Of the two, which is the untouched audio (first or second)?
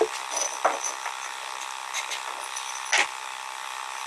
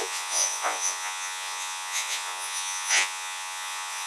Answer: first